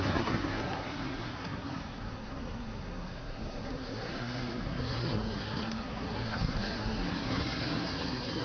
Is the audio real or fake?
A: fake